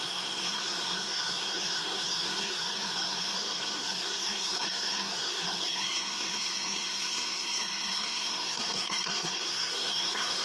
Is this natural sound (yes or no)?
no